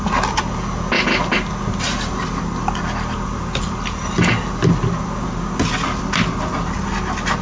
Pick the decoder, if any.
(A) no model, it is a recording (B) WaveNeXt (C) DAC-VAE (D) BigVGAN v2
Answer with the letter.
A